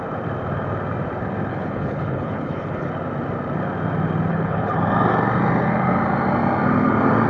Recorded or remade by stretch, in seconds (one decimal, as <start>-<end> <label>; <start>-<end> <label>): 0.0-1.5 recorded; 1.5-2.9 remade; 2.9-4.3 recorded; 4.3-4.8 remade; 4.8-7.3 recorded